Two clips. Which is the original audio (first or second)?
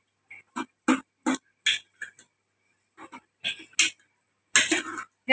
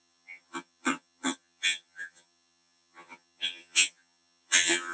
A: first